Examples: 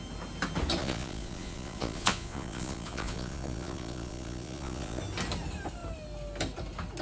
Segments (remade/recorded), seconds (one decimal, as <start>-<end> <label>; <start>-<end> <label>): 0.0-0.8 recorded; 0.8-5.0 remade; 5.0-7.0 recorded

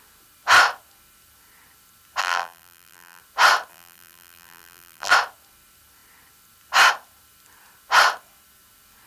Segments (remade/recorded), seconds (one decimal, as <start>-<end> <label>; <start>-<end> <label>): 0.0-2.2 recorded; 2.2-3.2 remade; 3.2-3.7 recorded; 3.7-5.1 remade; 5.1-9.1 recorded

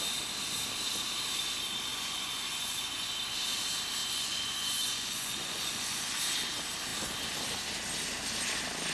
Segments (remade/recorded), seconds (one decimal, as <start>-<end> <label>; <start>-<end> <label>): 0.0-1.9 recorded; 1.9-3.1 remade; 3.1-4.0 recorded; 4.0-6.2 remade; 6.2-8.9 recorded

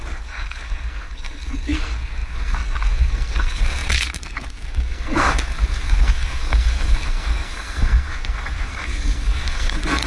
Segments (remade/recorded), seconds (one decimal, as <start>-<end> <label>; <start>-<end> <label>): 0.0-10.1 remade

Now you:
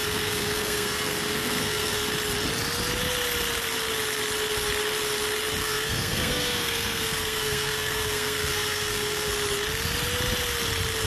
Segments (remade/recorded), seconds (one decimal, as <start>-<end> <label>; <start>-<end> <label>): 0.0-2.1 remade; 2.1-5.6 recorded; 5.6-9.3 remade; 9.3-11.1 recorded

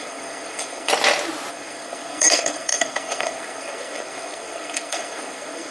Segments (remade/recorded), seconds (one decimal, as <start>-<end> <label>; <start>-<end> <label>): 0.0-0.9 remade; 0.9-1.5 recorded; 1.5-5.7 remade